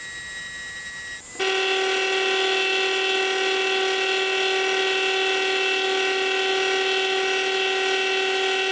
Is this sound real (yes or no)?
yes